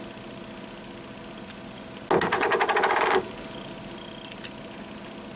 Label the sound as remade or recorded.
recorded